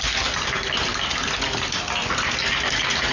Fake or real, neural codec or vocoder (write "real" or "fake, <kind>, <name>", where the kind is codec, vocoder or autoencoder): real